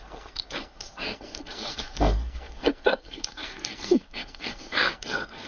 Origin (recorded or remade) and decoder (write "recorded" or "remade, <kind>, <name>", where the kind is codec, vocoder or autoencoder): remade, codec, SNAC